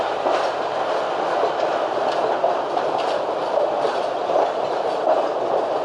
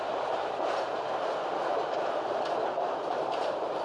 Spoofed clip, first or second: second